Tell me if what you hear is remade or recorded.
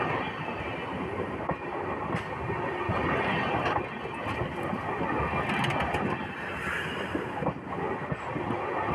recorded